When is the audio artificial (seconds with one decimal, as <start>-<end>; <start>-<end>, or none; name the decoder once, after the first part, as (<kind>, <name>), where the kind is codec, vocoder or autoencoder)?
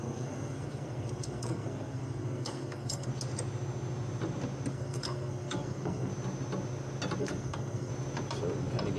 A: 0.0-3.1 (codec, SNAC); 4.7-6.1; 7.2-7.9